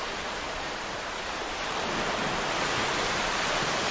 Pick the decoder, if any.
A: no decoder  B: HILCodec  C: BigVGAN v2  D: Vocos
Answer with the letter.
A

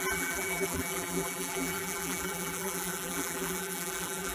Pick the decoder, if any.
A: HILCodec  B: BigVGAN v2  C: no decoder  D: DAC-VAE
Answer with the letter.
B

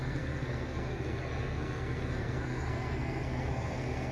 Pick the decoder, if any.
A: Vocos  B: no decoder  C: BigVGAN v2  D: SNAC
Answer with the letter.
D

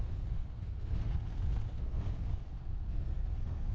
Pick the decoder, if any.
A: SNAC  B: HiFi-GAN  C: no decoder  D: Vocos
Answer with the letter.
A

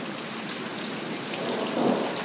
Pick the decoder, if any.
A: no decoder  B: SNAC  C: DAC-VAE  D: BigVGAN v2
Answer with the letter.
D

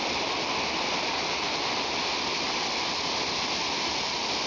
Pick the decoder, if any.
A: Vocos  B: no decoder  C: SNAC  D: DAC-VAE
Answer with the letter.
B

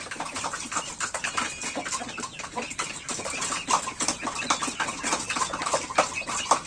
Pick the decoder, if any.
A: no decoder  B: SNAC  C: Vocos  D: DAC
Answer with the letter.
A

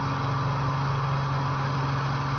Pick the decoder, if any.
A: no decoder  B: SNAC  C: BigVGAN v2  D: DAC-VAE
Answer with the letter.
A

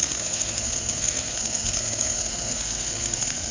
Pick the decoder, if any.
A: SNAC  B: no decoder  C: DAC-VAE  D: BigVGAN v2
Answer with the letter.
A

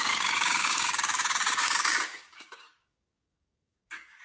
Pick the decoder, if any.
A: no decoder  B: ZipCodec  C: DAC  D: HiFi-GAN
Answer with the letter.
C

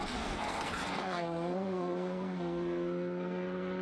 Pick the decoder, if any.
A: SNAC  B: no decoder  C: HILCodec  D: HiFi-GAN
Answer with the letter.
A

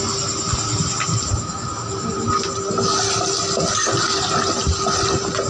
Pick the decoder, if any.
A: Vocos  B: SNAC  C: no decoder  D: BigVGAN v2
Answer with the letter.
C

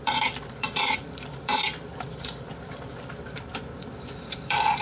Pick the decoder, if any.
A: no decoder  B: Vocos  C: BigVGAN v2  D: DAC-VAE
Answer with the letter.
C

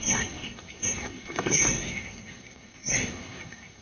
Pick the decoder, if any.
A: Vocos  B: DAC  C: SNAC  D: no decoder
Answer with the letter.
C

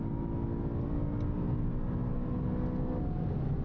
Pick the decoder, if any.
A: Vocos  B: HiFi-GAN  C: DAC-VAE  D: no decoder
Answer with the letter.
D